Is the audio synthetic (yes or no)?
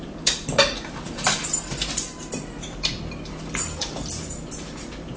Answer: yes